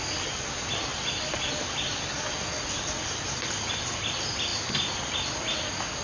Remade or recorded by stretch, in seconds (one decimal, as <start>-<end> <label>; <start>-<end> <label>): 0.0-0.9 recorded; 0.9-1.5 remade; 1.5-4.5 recorded; 4.5-5.5 remade; 5.5-6.0 recorded